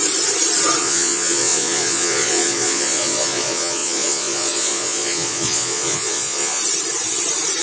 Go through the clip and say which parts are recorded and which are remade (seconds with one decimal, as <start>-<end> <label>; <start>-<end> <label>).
0.0-0.8 recorded; 0.8-6.6 remade; 6.6-7.6 recorded